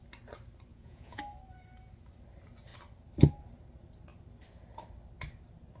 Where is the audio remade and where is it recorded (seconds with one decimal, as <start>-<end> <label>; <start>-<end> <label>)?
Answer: 0.0-0.7 recorded; 0.7-1.2 remade; 1.2-5.8 recorded